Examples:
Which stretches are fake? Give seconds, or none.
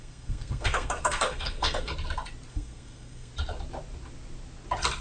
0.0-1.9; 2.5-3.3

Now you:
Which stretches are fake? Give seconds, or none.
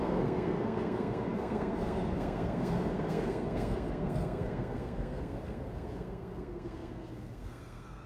0.0-8.1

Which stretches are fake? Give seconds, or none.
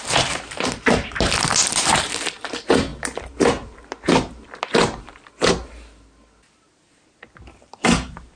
none